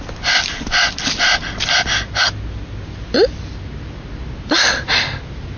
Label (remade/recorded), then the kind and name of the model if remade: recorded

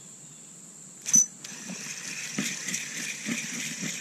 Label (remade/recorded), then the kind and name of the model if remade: recorded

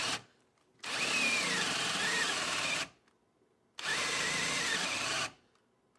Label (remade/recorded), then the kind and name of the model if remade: recorded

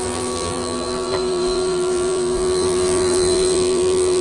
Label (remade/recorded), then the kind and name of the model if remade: remade, vocoder, BigVGAN v2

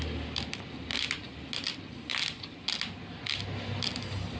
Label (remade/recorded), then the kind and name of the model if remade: recorded